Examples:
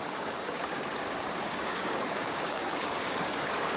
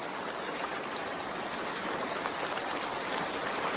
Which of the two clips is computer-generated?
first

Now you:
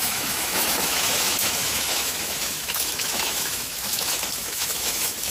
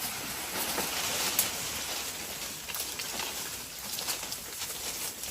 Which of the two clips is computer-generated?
first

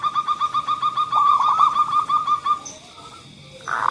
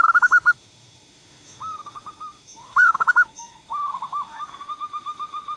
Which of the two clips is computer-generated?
second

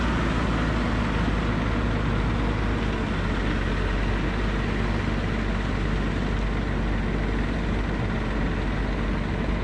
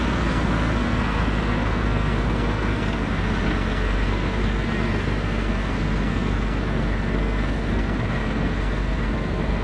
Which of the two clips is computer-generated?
second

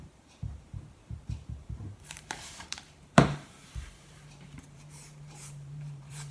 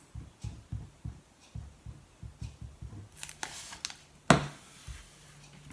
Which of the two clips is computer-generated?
first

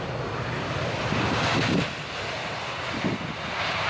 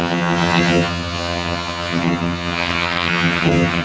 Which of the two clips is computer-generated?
second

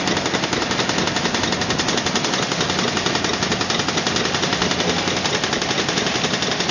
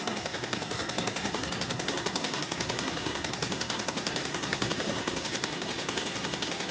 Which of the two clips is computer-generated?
second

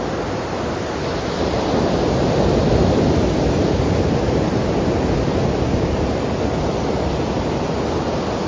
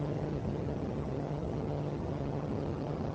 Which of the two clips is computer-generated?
second